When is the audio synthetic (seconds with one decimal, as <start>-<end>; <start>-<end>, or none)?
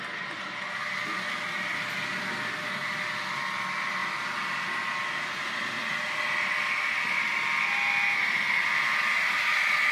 none